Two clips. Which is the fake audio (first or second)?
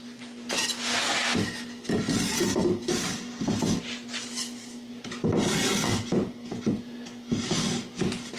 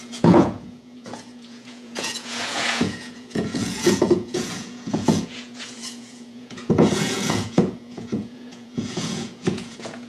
second